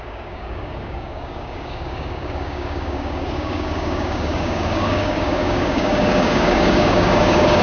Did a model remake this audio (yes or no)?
yes